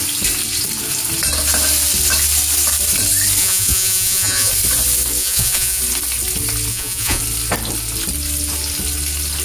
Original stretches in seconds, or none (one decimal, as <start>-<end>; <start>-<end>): 0.0-3.4; 4.5-5.2; 5.8-6.7; 7.2-9.4